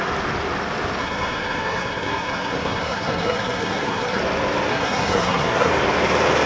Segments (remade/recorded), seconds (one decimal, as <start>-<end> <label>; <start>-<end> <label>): 0.0-1.0 recorded; 1.0-4.2 remade; 4.2-4.7 recorded; 4.7-5.7 remade; 5.7-6.5 recorded